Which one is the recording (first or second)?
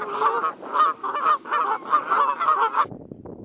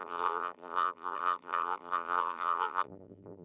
first